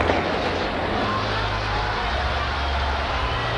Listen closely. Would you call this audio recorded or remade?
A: recorded